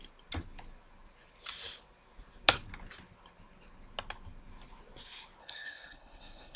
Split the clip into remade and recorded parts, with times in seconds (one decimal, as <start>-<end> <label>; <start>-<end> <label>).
0.0-5.4 recorded; 5.4-6.6 remade